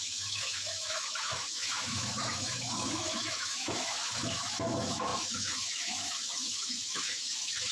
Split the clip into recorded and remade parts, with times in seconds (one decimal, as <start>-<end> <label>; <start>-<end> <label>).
0.0-7.7 remade